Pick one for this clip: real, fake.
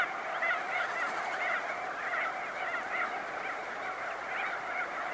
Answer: real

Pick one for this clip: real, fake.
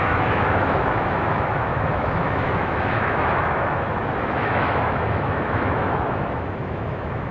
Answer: fake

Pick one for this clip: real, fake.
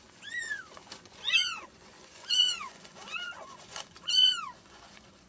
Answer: fake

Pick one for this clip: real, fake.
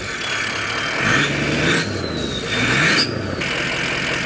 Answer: real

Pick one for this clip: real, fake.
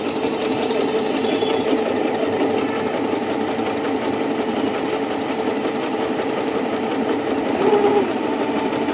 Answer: fake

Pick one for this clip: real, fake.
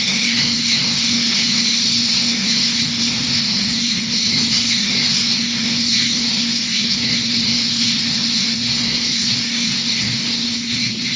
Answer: fake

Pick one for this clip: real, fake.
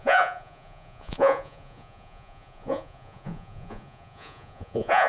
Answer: fake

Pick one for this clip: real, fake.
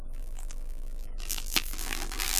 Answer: fake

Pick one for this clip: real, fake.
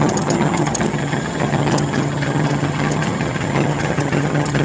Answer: fake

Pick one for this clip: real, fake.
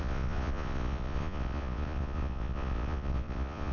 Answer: fake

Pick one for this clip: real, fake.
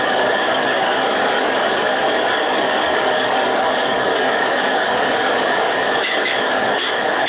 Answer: fake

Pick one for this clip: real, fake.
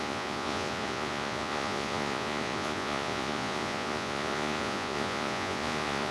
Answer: fake